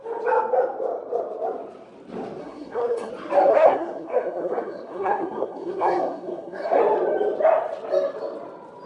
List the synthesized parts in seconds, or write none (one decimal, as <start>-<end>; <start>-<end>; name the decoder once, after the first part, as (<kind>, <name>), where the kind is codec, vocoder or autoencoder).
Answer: 2.4-3.1 (codec, SNAC); 3.5-6.8